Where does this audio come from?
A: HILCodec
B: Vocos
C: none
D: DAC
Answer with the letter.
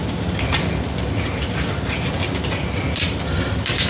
C